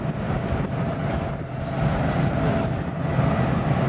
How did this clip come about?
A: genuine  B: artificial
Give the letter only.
A